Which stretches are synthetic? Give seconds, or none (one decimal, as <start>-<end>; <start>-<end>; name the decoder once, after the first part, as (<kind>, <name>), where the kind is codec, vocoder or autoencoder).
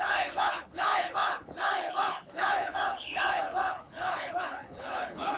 0.0-5.4 (codec, HILCodec)